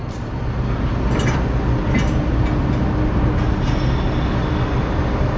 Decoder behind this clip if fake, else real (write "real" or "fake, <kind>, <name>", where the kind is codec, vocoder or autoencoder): real